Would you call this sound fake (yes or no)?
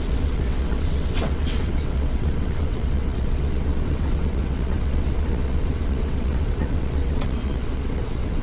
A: yes